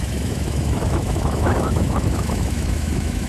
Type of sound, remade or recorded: remade